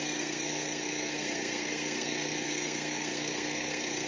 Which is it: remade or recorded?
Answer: remade